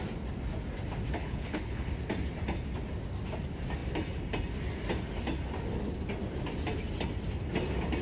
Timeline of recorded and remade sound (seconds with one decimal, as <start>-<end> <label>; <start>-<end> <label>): 0.0-1.2 recorded; 1.2-1.9 remade; 1.9-8.0 recorded